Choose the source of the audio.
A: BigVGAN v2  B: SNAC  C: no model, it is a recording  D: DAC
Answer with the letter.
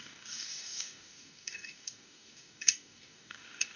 D